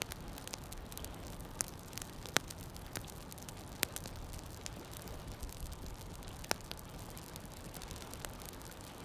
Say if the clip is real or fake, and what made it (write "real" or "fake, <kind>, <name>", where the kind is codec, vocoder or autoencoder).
real